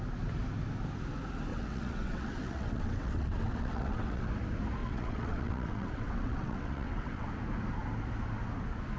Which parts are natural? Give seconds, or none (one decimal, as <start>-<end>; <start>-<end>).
0.0-1.5; 4.3-4.8; 7.3-9.0